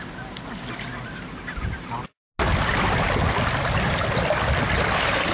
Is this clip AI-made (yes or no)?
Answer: no